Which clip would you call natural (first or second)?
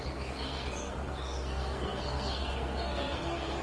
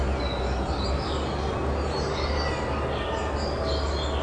second